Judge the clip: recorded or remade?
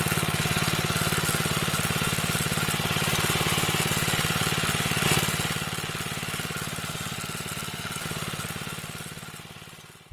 recorded